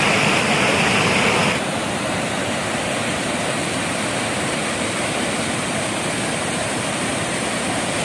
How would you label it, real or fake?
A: real